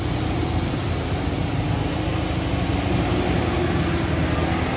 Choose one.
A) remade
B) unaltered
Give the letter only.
B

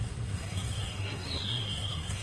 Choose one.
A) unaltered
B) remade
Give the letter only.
B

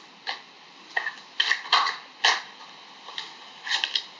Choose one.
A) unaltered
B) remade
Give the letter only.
A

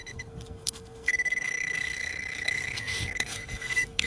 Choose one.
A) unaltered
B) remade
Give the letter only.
B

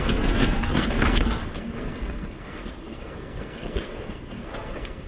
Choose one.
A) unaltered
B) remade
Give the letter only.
B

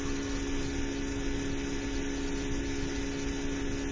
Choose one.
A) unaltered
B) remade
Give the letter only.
A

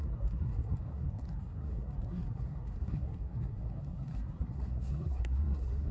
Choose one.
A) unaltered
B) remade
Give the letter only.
B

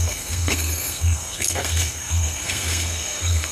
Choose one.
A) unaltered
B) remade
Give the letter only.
B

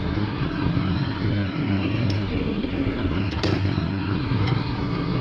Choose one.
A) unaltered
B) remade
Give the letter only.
B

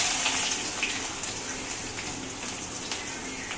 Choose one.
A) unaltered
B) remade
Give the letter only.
A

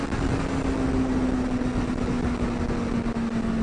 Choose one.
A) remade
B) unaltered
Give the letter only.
B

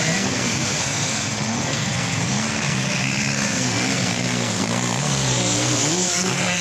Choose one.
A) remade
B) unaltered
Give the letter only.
A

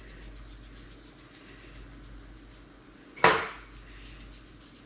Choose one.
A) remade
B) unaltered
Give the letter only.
B